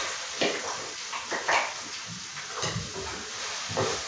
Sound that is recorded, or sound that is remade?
recorded